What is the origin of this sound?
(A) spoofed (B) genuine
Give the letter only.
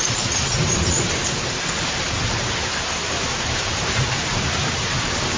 A